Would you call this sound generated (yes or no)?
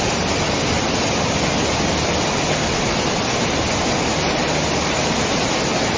no